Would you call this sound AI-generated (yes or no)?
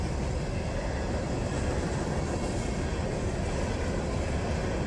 no